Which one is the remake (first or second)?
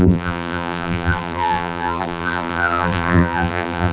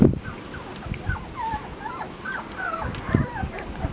first